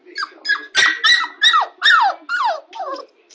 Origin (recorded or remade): recorded